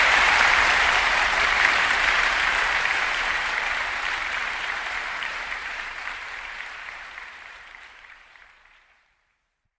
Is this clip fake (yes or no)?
yes